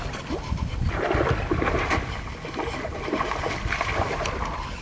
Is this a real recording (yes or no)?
yes